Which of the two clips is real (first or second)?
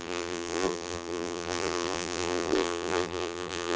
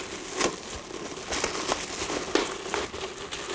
second